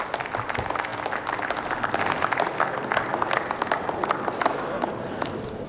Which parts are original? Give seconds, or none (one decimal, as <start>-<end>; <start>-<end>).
0.0-5.7